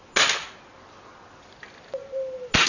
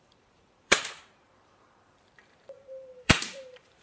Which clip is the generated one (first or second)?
second